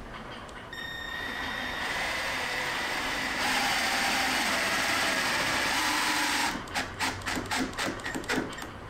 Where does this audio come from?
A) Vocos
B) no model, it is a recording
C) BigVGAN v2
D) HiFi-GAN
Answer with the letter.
C